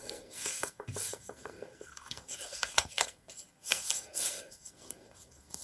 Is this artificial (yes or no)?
yes